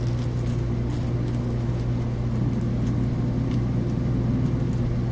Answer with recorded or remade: recorded